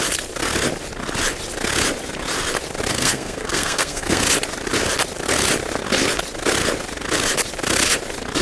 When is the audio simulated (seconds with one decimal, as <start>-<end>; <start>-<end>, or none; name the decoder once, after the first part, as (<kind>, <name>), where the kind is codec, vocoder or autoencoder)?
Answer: 2.9-4.2 (codec, SNAC)